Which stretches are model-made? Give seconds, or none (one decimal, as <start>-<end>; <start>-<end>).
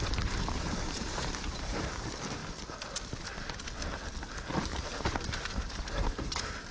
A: 0.0-2.4; 4.6-6.7